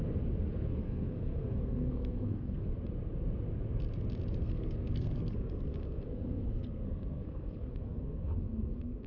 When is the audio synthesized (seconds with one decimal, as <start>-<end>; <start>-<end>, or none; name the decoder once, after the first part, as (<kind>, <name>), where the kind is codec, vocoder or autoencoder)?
0.7-2.7 (codec, SNAC); 4.4-9.1